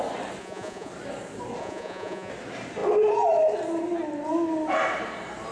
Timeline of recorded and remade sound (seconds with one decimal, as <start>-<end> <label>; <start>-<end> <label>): 0.0-0.4 recorded; 0.4-0.9 remade; 0.9-1.6 recorded; 1.6-2.3 remade; 2.3-5.5 recorded

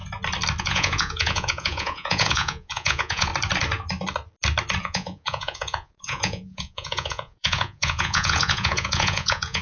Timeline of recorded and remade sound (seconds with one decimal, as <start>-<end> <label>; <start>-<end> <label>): 0.0-0.6 recorded; 0.6-3.3 remade; 3.3-4.8 recorded; 4.8-9.6 remade

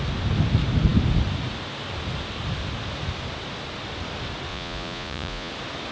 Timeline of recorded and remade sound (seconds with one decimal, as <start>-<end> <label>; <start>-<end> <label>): 0.0-4.5 recorded; 4.5-5.5 remade; 5.5-5.9 recorded

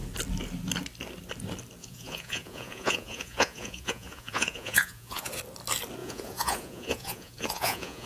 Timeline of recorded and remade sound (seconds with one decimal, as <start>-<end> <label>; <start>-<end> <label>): 0.0-1.8 recorded; 1.8-5.3 remade; 5.3-6.0 recorded; 6.0-8.1 remade